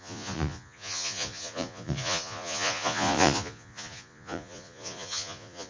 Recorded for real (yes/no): no